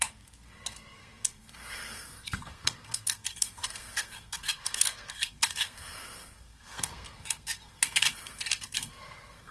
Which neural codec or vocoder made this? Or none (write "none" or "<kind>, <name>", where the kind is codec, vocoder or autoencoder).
codec, SNAC